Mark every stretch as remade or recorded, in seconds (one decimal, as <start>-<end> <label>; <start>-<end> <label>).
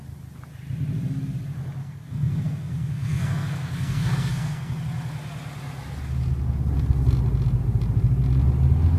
0.0-1.8 recorded; 1.8-4.8 remade; 4.8-9.0 recorded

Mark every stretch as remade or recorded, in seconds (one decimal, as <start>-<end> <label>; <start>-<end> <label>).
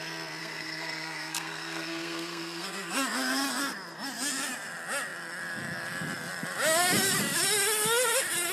0.0-0.4 recorded; 0.4-2.9 remade; 2.9-8.5 recorded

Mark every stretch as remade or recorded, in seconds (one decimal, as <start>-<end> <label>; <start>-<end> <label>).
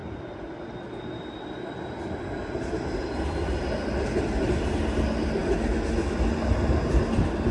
0.0-7.5 recorded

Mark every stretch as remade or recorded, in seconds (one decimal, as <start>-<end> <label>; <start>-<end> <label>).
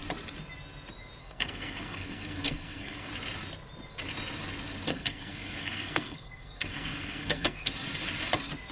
0.0-1.2 recorded; 1.2-3.1 remade; 3.1-4.9 recorded; 4.9-7.7 remade; 7.7-8.7 recorded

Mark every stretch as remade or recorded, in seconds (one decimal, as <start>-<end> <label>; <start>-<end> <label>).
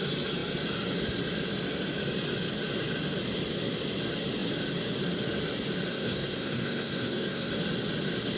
0.0-5.9 recorded; 5.9-7.5 remade; 7.5-8.4 recorded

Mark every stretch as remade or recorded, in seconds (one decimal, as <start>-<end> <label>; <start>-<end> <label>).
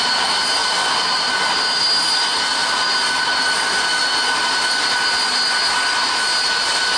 0.0-7.0 recorded